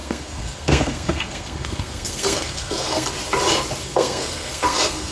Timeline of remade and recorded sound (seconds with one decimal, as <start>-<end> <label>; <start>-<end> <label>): 0.0-3.1 remade; 3.1-3.8 recorded; 3.8-5.1 remade